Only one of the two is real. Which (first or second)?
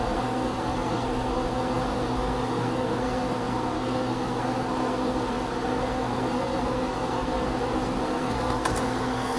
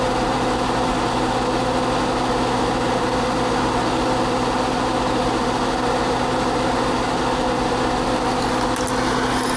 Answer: second